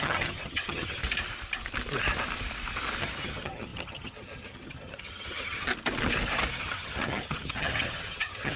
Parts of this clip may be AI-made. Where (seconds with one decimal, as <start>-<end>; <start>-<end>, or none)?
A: 0.0-1.0; 3.0-5.7; 6.5-8.6